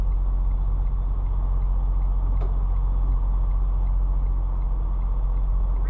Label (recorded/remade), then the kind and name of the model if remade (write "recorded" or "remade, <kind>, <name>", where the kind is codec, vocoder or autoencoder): recorded